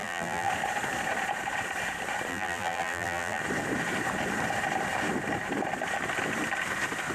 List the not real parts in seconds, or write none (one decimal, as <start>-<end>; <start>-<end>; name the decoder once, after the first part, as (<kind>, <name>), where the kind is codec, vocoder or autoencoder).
0.0-0.5 (vocoder, BigVGAN v2); 2.3-3.4